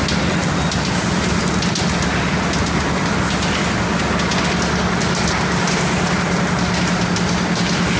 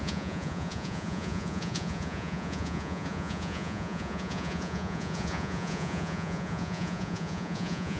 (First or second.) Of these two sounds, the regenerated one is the second